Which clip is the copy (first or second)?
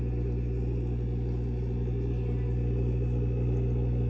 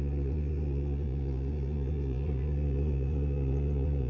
second